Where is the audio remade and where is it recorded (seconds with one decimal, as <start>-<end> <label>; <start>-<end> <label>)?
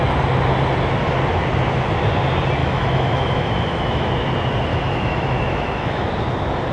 0.0-2.6 recorded; 2.6-4.1 remade; 4.1-4.7 recorded; 4.7-6.1 remade; 6.1-6.7 recorded